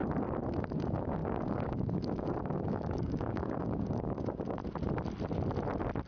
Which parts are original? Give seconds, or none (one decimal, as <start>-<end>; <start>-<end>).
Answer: 0.0-0.5; 4.6-6.1